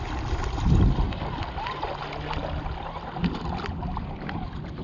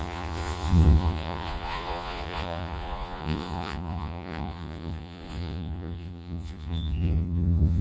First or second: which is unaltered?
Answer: first